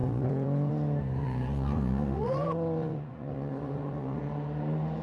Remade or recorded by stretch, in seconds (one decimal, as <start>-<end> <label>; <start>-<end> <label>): 0.0-0.7 remade; 0.7-1.2 recorded; 1.2-4.2 remade; 4.2-5.0 recorded